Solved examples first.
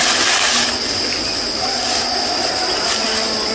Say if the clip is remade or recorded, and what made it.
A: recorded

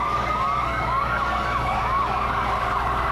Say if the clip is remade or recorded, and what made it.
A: remade, codec, DAC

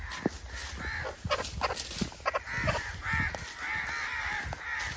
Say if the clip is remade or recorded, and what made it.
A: recorded